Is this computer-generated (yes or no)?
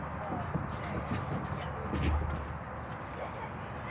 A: no